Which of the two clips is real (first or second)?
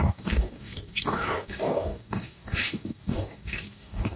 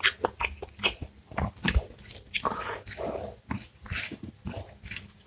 second